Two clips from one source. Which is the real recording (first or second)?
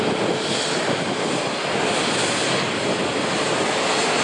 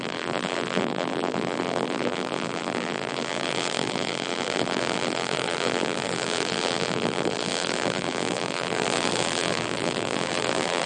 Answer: first